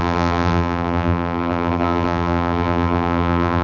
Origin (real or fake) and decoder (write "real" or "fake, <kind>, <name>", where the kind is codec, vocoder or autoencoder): fake, vocoder, BigVGAN v2